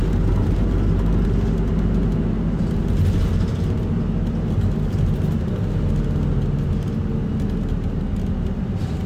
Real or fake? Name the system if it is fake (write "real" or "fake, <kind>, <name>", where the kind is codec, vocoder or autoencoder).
real